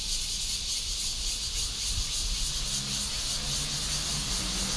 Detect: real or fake real